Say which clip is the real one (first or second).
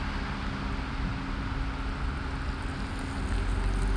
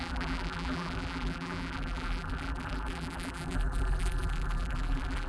first